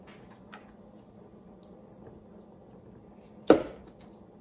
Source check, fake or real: real